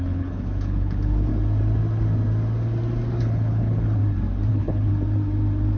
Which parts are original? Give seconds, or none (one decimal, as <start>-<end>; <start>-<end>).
1.3-3.2; 4.0-4.5; 4.9-5.8